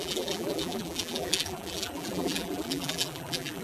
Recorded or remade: remade